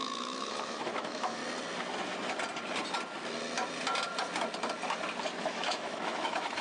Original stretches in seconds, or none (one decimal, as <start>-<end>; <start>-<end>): 1.4-5.4